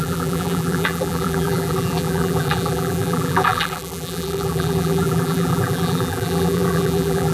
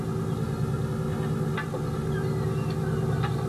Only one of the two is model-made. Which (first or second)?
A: first